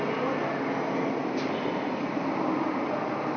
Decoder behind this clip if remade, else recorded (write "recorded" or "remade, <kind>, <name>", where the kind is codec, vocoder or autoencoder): recorded